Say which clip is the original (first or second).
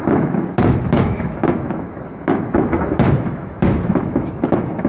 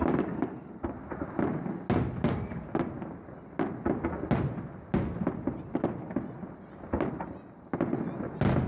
second